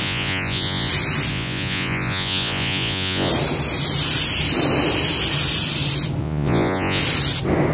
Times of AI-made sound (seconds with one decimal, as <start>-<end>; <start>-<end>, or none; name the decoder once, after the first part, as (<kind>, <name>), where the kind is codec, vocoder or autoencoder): 0.0-0.9 (vocoder, Vocos); 1.3-3.3; 6.2-7.0